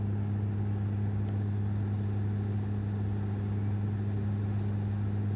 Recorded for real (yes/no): yes